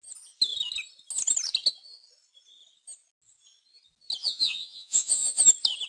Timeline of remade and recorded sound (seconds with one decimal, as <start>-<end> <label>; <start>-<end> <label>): 0.0-4.2 recorded; 4.2-5.4 remade; 5.4-5.9 recorded